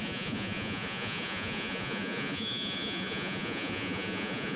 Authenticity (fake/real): fake